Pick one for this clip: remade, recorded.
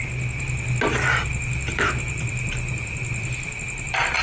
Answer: recorded